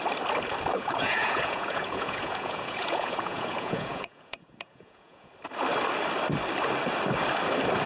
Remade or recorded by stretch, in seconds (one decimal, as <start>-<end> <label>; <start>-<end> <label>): 0.0-0.7 recorded; 0.7-5.3 remade; 5.3-7.9 recorded